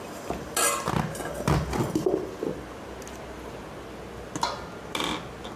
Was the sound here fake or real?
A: real